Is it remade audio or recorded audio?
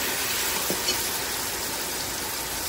recorded